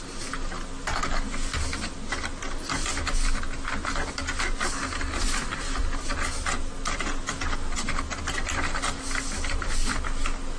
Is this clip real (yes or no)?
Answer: yes